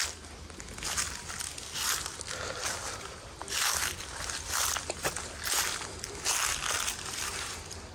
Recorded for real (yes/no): yes